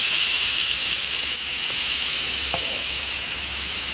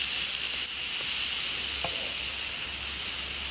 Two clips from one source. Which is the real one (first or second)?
second